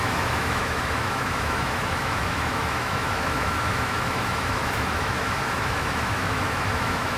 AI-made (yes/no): yes